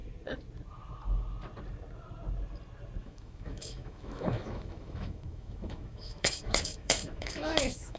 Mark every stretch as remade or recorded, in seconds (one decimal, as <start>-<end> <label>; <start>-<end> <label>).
0.0-3.0 recorded; 3.0-8.0 remade